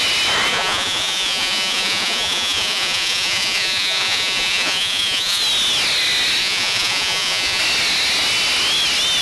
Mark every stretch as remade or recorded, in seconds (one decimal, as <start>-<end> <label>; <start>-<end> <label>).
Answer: 0.0-0.5 recorded; 0.5-5.4 remade; 5.4-6.4 recorded; 6.4-7.6 remade; 7.6-9.2 recorded